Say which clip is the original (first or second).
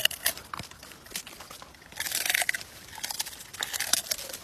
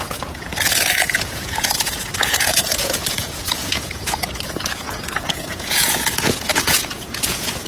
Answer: first